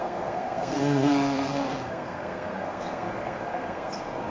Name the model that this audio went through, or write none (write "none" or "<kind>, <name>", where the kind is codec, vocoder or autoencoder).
codec, SNAC